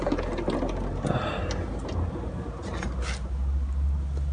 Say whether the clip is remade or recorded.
recorded